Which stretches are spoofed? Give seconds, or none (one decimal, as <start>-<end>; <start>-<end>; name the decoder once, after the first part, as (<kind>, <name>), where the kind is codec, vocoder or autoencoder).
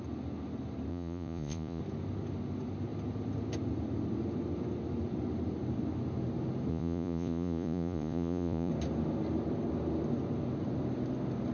0.9-1.8 (vocoder, Vocos); 6.7-8.7